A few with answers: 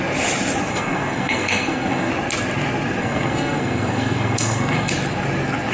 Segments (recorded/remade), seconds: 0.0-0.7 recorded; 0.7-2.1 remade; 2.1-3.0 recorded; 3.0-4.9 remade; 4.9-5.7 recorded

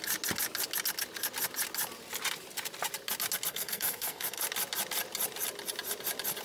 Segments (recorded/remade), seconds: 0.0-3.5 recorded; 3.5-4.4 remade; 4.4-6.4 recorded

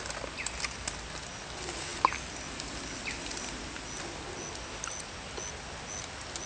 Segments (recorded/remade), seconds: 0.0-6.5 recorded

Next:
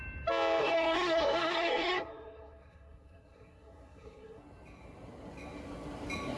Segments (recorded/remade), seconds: 0.0-0.6 recorded; 0.6-4.4 remade; 4.4-6.4 recorded

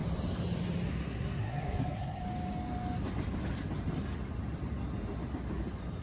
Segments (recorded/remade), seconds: 0.0-0.9 recorded; 0.9-2.2 remade; 2.2-6.0 recorded